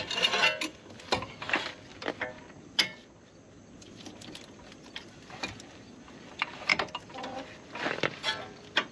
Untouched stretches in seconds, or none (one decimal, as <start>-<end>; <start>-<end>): 0.0-8.9